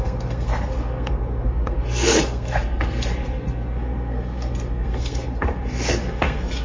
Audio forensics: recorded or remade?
remade